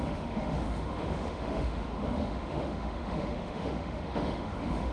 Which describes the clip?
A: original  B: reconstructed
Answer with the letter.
B